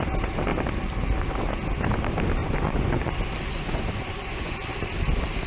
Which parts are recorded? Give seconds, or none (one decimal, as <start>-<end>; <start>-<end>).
0.0-2.4; 3.1-3.5; 4.6-5.5